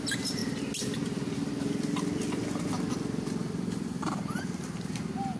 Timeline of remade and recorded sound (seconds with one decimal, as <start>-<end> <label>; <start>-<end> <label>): 0.0-3.4 recorded; 3.4-4.4 remade; 4.4-5.4 recorded